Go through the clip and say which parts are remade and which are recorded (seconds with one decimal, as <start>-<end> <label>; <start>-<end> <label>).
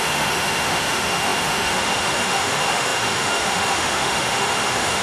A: 0.0-5.0 remade